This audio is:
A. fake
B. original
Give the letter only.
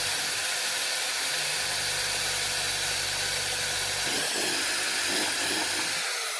B